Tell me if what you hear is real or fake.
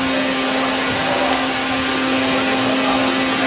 real